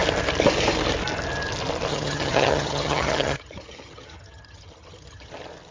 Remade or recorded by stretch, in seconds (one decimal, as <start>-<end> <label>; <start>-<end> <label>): 0.0-1.9 recorded; 1.9-5.3 remade; 5.3-5.7 recorded

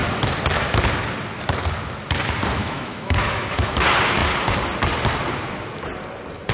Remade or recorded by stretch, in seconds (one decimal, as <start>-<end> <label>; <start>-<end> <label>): 0.0-2.6 recorded; 2.6-3.7 remade; 3.7-6.5 recorded